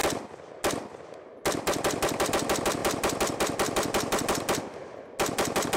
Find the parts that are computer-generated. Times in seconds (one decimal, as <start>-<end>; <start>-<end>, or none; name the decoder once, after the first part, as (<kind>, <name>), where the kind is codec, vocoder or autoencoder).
none